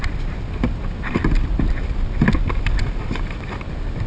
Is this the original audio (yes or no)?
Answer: yes